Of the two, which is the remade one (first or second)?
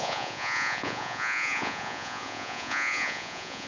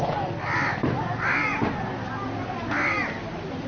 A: first